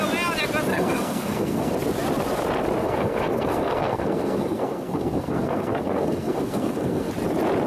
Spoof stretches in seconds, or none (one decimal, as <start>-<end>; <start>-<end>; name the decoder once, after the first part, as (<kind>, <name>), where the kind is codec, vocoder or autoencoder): 0.7-1.7 (codec, SNAC); 2.8-7.1